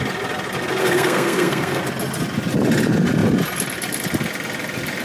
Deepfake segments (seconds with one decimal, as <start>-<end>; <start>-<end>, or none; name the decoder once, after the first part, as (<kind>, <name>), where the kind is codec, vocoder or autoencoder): 0.8-1.8 (codec, SNAC)